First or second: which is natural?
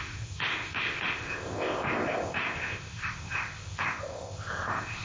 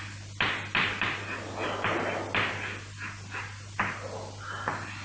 second